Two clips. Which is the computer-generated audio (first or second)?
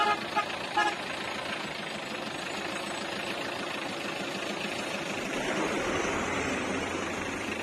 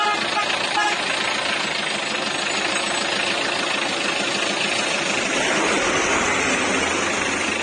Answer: first